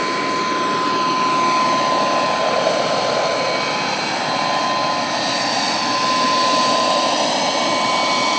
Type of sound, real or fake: real